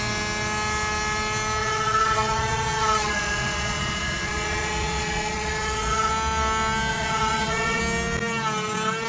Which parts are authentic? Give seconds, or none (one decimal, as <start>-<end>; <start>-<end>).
0.0-1.6; 6.1-6.9; 7.8-9.1